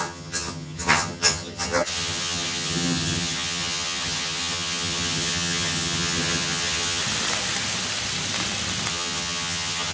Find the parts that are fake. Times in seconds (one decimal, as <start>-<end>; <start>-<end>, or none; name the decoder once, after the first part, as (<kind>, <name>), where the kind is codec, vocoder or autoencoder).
0.0-7.0 (vocoder, HiFi-GAN); 8.9-9.9